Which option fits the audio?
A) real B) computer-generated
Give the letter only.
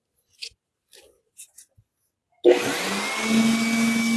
A